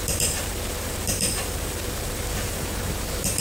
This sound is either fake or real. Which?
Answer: fake